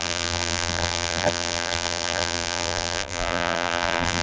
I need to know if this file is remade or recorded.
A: remade